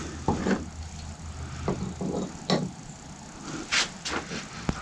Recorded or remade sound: recorded